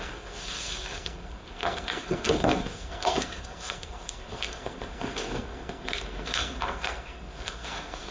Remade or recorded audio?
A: remade